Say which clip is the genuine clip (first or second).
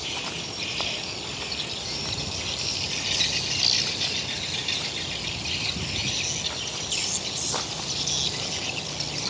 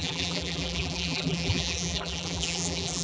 first